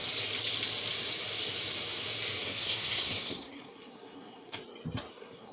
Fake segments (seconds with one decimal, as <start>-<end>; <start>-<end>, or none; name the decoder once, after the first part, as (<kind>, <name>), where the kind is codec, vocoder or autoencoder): 2.4-4.6 (codec, SNAC); 5.1-5.5